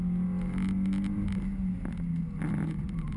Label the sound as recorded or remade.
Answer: recorded